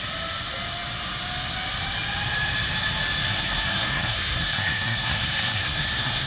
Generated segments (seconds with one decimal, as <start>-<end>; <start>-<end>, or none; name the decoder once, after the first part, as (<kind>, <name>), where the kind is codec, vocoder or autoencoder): 3.3-6.3 (codec, SNAC)

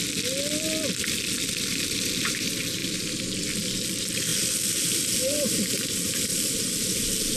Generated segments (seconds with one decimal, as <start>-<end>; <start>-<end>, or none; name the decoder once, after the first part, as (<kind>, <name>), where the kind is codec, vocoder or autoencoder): 1.7-2.4 (vocoder, BigVGAN v2); 4.3-5.8; 6.3-7.4

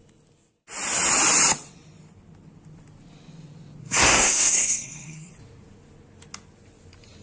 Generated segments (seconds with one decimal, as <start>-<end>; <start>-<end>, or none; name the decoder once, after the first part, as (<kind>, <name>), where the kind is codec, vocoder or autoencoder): 3.8-5.3 (codec, SNAC)

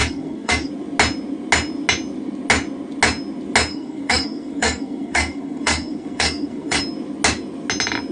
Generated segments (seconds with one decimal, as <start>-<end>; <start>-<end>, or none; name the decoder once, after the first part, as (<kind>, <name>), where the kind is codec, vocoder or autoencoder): 0.0-0.7 (codec, SNAC); 3.7-6.8

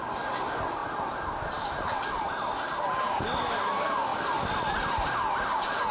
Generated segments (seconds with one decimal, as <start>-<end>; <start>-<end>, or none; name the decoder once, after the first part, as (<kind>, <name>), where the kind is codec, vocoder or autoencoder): none